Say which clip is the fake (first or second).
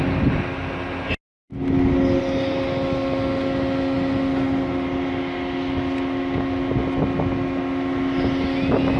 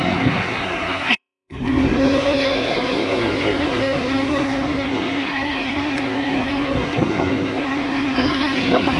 second